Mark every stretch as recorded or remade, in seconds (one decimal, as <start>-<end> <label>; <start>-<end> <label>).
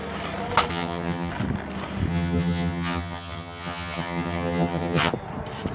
0.0-0.7 recorded; 0.7-1.3 remade; 1.3-2.1 recorded; 2.1-5.1 remade; 5.1-5.7 recorded